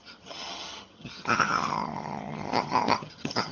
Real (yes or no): no